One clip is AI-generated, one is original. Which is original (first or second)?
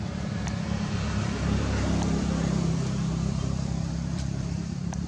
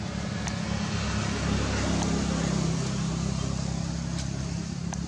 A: second